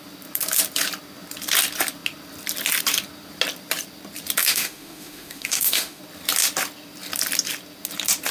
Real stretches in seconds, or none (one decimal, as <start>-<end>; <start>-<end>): 0.0-4.4; 6.0-8.3